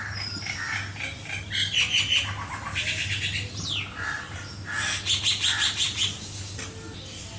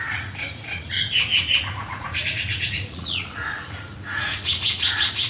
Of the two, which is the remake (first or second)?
second